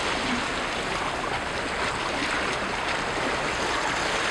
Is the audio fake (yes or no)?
no